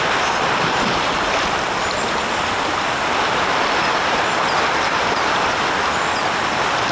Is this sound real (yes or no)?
yes